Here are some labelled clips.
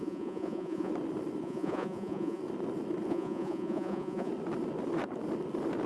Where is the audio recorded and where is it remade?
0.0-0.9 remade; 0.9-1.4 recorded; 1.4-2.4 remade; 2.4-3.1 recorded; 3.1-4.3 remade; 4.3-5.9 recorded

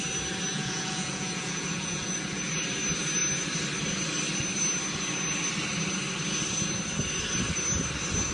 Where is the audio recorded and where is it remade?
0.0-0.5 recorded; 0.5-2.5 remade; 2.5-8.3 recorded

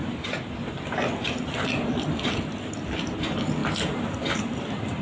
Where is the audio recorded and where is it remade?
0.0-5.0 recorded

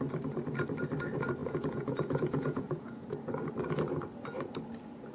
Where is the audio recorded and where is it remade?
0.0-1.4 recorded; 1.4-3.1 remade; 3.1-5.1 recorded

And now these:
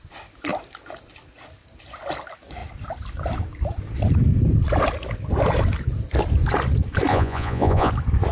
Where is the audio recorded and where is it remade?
0.0-7.1 recorded; 7.1-7.9 remade; 7.9-8.3 recorded

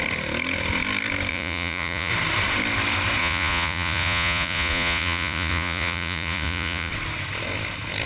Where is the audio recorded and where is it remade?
0.0-1.3 recorded; 1.3-2.1 remade; 2.1-3.2 recorded; 3.2-6.9 remade; 6.9-8.1 recorded